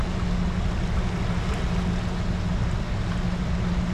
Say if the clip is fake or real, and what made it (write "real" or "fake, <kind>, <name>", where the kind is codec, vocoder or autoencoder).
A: real